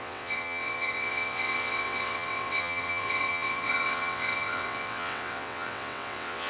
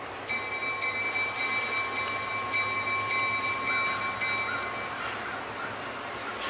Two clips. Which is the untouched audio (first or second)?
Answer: second